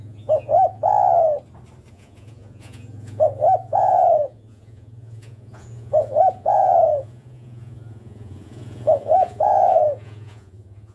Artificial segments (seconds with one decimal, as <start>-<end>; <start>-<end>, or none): 0.0-0.9; 1.9-10.9